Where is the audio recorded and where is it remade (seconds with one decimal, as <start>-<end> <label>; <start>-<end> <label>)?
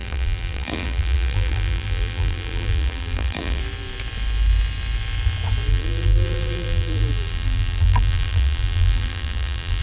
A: 0.0-3.6 remade; 3.6-5.7 recorded; 5.7-9.8 remade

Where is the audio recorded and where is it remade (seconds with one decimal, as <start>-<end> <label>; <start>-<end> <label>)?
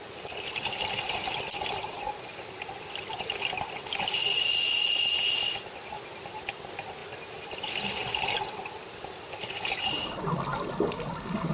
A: 0.0-11.5 recorded